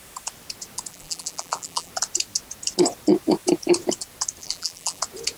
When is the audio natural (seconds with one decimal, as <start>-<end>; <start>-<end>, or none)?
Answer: 0.0-0.9; 1.9-4.4; 5.0-5.4